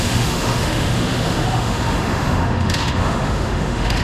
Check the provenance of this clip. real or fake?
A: fake